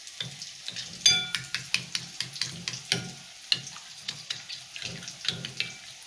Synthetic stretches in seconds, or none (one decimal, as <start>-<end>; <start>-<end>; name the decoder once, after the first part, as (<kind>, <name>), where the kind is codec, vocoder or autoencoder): 3.9-4.6 (vocoder, Vocos)